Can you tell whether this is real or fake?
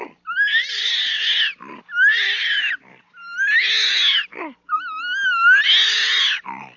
real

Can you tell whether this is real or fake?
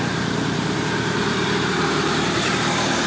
fake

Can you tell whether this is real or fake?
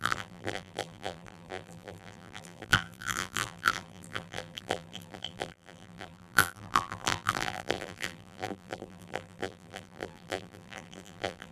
fake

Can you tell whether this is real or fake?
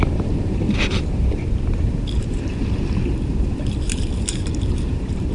fake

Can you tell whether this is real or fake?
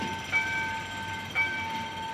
fake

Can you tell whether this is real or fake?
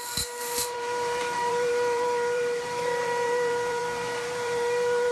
fake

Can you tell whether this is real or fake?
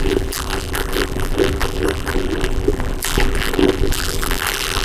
fake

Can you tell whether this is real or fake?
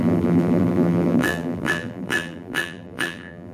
fake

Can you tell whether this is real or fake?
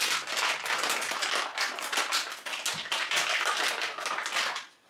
real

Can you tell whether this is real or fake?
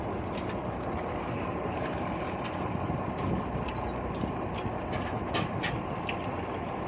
real